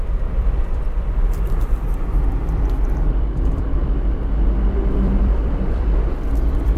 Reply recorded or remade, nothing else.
remade